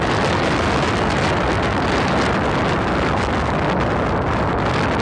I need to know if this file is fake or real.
real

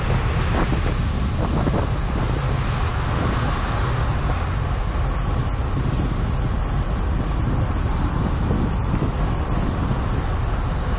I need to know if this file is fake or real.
real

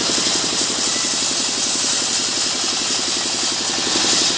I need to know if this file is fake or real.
real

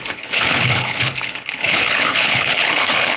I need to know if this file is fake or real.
fake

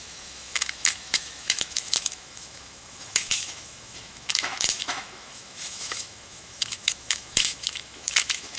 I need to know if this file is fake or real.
fake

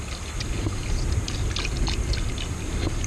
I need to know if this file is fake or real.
real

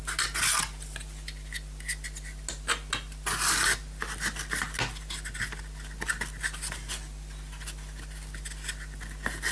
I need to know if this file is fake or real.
real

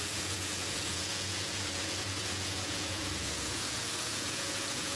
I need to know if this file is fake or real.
fake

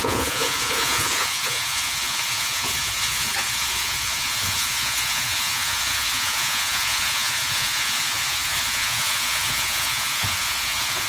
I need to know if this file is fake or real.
fake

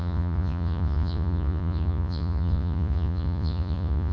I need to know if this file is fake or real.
fake